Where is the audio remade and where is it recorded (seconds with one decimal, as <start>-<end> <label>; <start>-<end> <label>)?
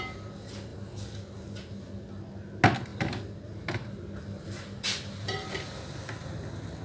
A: 0.0-6.8 recorded